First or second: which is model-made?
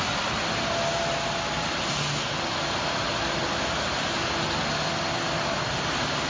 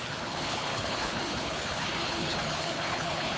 second